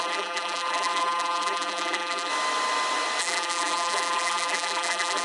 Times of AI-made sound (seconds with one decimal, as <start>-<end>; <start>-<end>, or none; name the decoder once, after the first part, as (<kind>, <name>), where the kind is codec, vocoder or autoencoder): 0.0-2.3 (vocoder, BigVGAN v2); 3.2-5.2